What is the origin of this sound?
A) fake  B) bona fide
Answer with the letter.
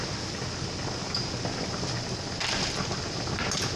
B